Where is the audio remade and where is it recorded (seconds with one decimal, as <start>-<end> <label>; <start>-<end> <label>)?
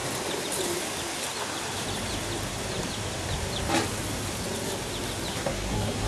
0.0-5.3 recorded; 5.3-6.1 remade